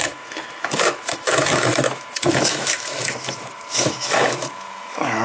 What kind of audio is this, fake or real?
fake